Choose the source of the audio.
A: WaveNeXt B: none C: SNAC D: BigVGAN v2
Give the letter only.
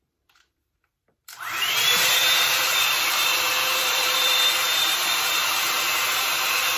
D